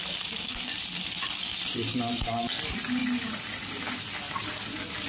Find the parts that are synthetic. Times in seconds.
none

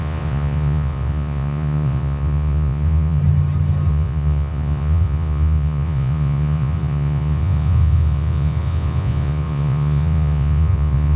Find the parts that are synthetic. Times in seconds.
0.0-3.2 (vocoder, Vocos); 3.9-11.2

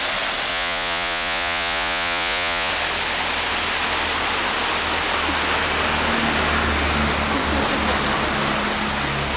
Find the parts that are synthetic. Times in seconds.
0.5-2.7 (vocoder, Vocos)